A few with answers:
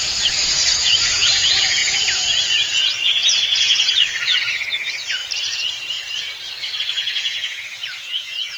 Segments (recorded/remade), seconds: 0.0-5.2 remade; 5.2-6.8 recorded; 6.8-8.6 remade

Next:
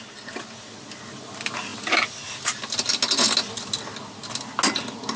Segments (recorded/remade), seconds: 0.0-5.2 recorded

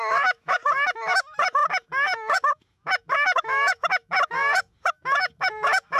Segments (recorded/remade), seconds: 0.0-6.0 remade

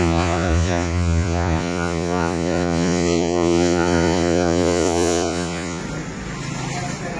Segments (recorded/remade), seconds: 0.0-5.8 remade; 5.8-7.2 recorded